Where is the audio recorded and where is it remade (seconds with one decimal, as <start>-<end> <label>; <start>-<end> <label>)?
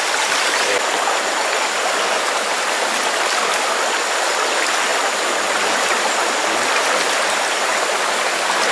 0.0-8.7 recorded